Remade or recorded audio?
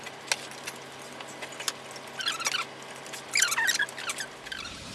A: recorded